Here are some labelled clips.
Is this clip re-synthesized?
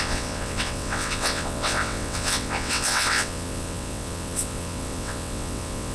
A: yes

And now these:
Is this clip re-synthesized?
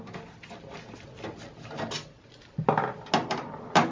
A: no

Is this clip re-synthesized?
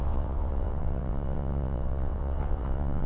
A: yes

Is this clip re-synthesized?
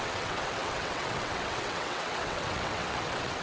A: yes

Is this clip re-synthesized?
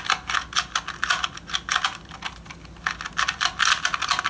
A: no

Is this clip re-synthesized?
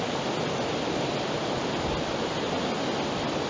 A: no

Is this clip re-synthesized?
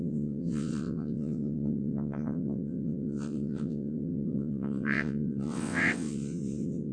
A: yes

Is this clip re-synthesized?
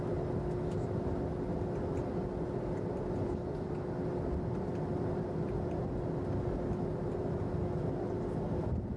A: no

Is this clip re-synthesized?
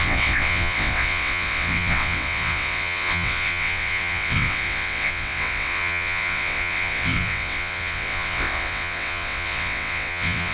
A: yes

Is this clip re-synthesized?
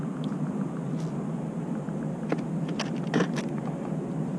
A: no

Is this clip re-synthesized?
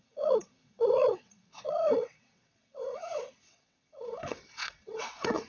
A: yes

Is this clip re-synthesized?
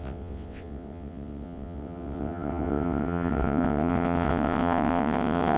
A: yes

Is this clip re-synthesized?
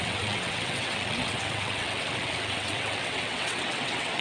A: yes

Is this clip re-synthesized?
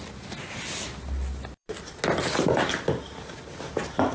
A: no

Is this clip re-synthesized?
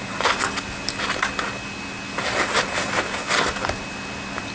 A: no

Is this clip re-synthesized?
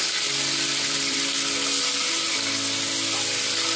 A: no